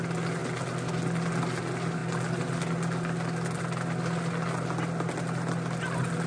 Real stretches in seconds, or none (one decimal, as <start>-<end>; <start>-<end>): 0.0-6.3